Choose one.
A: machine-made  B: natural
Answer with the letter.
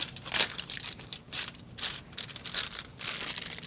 B